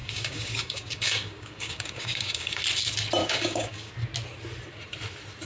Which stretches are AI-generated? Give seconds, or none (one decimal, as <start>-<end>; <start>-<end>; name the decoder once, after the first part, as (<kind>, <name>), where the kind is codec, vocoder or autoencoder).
0.0-2.6 (codec, DAC); 3.2-3.9